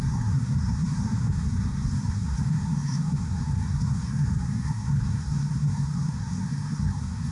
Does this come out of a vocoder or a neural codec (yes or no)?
yes